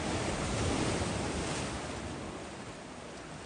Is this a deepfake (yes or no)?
no